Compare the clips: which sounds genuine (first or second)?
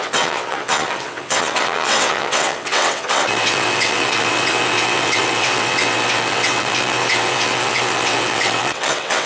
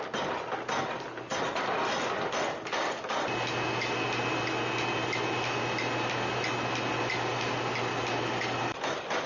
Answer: second